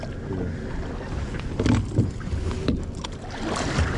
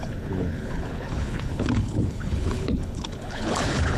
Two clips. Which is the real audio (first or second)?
first